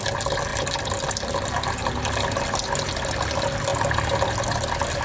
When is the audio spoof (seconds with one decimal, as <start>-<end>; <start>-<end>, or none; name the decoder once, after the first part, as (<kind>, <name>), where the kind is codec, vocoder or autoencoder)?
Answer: none